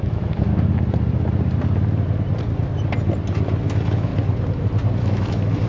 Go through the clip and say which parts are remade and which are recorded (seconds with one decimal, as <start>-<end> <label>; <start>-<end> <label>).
0.0-0.5 remade; 0.5-3.6 recorded; 3.6-4.1 remade; 4.1-5.0 recorded; 5.0-5.7 remade